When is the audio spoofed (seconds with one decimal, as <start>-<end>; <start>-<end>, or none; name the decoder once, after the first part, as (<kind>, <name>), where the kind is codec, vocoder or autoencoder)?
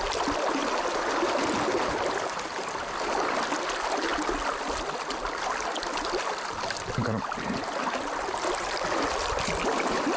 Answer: none